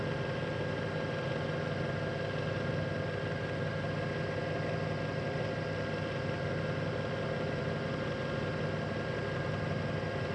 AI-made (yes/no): no